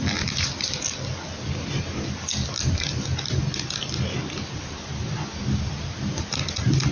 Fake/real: real